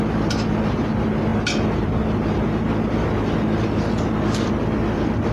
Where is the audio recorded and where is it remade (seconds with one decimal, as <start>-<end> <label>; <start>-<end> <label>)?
0.0-5.3 recorded